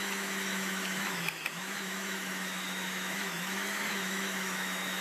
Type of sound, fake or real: fake